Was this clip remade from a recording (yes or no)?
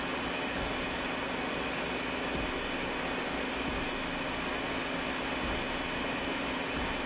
no